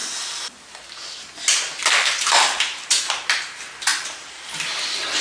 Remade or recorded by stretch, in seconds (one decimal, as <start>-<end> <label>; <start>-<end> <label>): 0.0-0.6 remade; 0.6-1.8 recorded; 1.8-3.2 remade; 3.2-3.9 recorded; 3.9-4.8 remade; 4.8-5.2 recorded